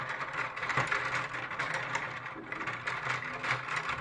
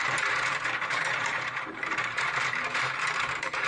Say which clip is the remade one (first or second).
second